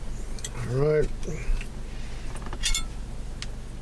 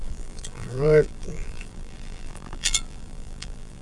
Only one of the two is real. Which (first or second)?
first